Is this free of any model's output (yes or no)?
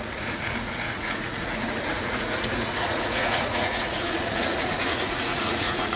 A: no